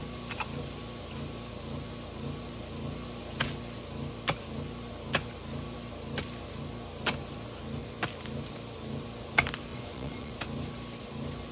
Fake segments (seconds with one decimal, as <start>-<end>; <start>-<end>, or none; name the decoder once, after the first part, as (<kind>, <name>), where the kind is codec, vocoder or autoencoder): 9.7-10.3 (vocoder, Vocos)